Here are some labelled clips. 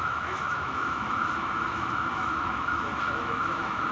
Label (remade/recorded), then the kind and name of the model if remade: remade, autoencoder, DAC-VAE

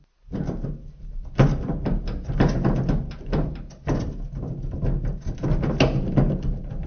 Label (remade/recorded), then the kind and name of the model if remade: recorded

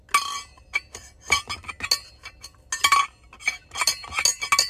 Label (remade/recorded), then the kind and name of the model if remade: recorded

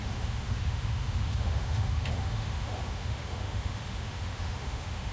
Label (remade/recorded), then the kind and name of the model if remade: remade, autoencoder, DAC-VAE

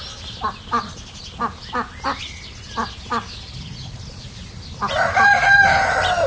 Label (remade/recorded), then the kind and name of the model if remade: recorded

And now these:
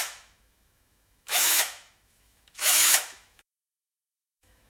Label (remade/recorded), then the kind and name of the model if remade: remade, autoencoder, DAC-VAE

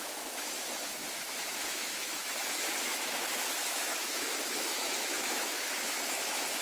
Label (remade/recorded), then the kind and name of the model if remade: remade, autoencoder, DAC-VAE